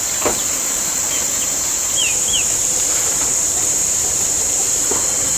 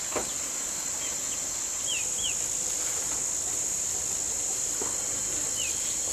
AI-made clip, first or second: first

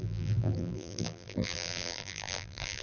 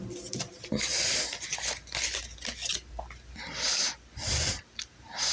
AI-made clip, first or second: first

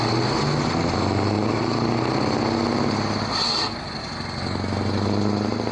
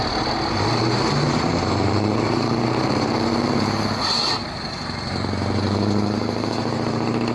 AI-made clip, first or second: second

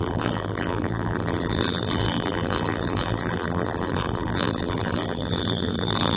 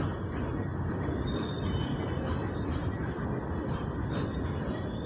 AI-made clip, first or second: first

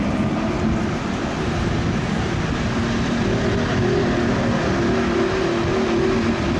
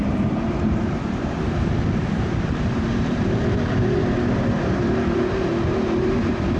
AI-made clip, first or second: second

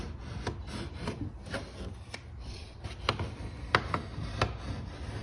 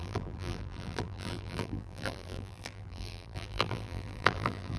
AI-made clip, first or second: second